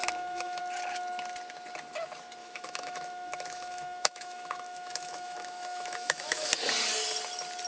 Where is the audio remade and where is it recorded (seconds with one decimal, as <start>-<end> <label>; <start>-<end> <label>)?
0.0-0.6 remade; 0.6-2.4 recorded; 2.4-6.5 remade; 6.5-7.7 recorded